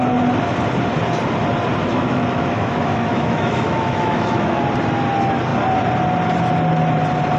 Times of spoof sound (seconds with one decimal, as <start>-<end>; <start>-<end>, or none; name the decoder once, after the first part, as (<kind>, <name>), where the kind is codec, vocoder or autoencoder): 1.8-4.6 (autoencoder, DAC-VAE)